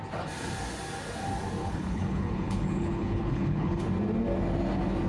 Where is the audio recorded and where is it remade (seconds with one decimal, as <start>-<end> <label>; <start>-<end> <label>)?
0.0-1.6 recorded; 1.6-3.8 remade; 3.8-5.1 recorded